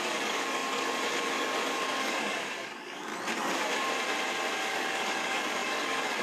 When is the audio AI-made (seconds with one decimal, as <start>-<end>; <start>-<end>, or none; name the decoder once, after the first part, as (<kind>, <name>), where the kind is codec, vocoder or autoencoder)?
0.0-3.1 (codec, DAC); 4.6-6.2